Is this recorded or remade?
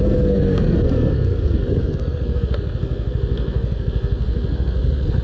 remade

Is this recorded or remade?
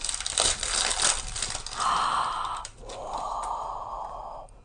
recorded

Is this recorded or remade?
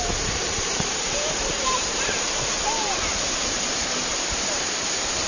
remade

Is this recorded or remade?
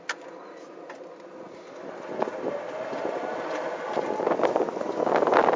recorded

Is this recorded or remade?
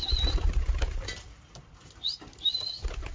recorded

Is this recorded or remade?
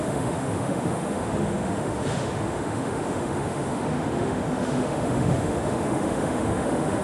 remade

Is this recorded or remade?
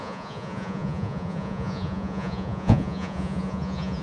remade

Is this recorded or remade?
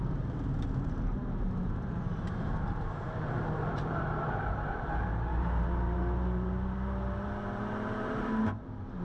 remade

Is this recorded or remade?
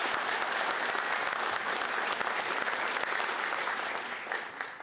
recorded